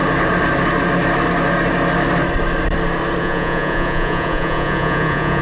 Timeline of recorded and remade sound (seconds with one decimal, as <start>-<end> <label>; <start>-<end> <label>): 0.0-3.2 recorded; 3.2-5.4 remade